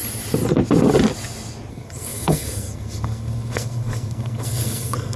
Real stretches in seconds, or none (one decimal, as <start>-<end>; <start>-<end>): 0.0-1.7